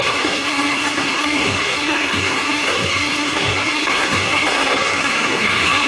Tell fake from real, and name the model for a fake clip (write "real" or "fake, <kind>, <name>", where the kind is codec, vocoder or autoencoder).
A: fake, codec, SNAC